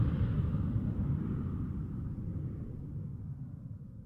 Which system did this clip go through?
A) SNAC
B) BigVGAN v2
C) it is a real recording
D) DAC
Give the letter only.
C